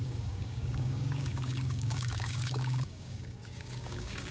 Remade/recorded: remade